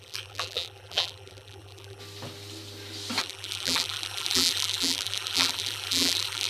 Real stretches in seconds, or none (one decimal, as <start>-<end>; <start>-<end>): 2.0-3.2